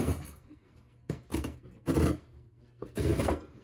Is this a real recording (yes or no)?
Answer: no